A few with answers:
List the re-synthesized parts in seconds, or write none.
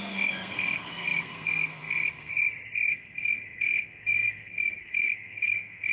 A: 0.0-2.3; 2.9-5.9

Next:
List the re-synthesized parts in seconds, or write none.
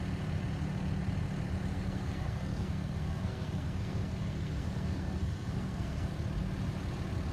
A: 1.7-6.1